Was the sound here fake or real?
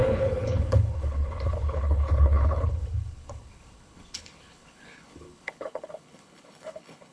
fake